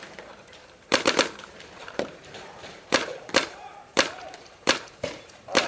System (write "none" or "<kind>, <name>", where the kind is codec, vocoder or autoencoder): vocoder, BigVGAN v2